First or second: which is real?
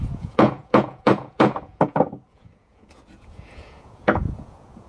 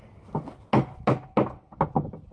second